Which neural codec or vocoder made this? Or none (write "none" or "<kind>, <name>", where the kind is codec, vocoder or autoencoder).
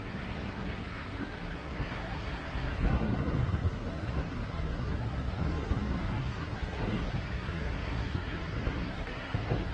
codec, SNAC